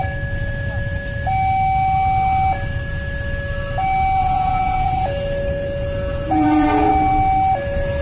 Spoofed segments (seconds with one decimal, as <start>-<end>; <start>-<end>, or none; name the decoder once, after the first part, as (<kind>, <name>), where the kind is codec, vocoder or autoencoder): 4.2-6.9 (vocoder, Vocos)